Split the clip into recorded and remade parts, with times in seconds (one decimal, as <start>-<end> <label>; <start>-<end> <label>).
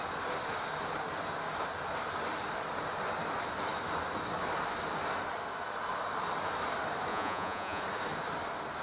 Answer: 0.0-7.1 recorded; 7.1-7.8 remade; 7.8-8.8 recorded